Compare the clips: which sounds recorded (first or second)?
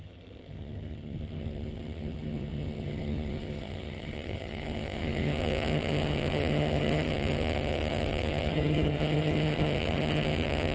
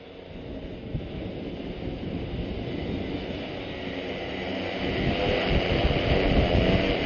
second